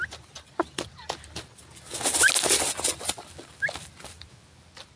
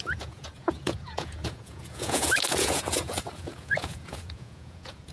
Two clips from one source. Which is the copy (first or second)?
second